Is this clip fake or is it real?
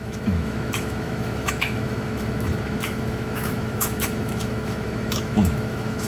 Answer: fake